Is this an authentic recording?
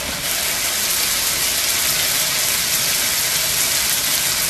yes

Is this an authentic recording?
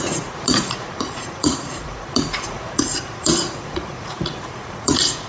no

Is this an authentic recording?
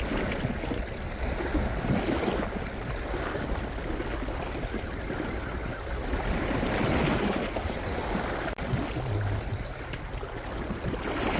yes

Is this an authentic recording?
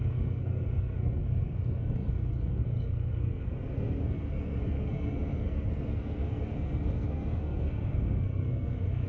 no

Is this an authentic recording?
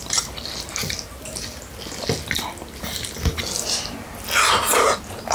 yes